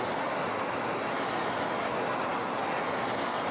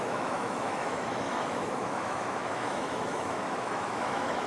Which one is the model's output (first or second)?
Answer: second